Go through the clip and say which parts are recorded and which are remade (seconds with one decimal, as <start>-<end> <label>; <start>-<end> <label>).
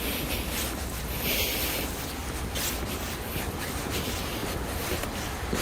0.0-5.6 recorded